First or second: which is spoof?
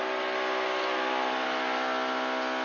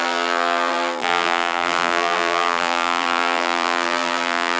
second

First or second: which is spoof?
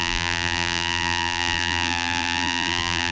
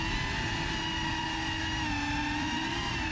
first